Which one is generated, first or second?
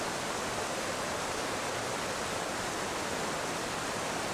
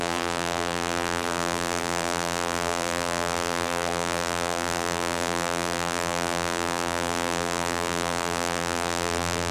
second